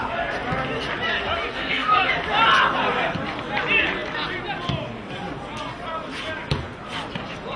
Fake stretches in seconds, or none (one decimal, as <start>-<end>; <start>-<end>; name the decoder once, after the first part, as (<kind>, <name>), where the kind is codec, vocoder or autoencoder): 1.5-2.1 (codec, SNAC)